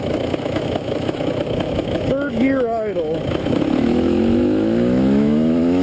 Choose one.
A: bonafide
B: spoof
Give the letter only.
B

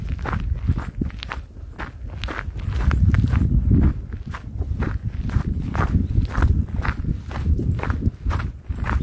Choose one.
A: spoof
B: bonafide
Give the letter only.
B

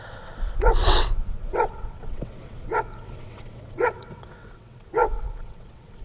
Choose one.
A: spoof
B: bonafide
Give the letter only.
A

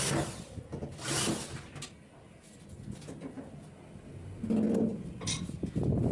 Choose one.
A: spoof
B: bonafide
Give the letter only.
B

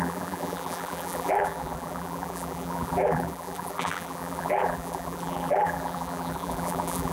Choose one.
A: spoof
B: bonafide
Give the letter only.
A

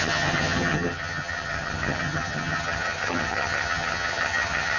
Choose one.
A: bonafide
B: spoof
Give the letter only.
B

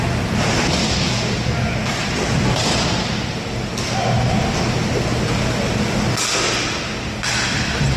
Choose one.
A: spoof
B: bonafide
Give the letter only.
B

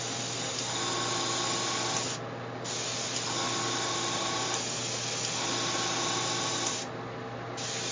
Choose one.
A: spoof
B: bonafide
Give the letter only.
B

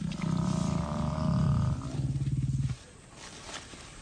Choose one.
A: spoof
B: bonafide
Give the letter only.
B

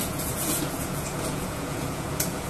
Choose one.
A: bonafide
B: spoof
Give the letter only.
B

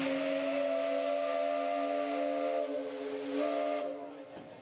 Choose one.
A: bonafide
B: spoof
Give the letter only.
A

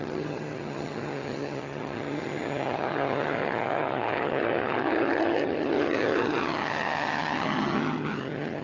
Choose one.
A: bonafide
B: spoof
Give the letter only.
B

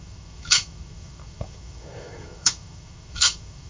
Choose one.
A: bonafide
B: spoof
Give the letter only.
B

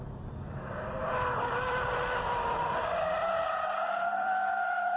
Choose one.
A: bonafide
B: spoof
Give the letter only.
B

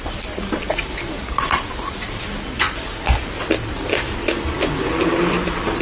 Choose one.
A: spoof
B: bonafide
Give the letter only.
B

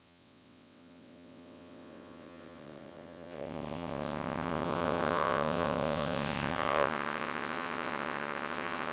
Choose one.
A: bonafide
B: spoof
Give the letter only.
B